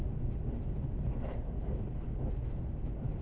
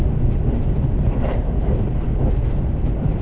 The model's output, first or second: second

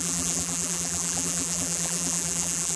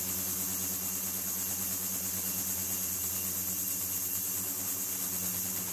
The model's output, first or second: first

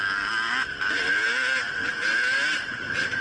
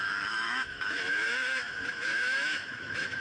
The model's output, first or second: second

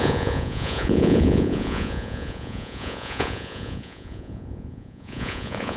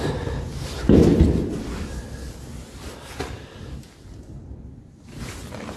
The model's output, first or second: first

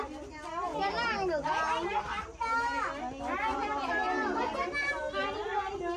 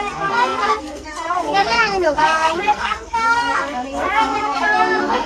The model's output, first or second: second